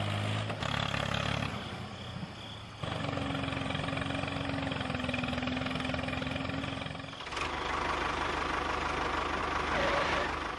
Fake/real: real